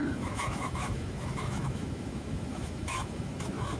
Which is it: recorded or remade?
remade